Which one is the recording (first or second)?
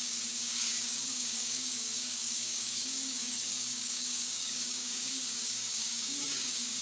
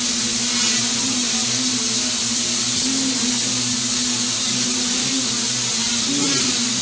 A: second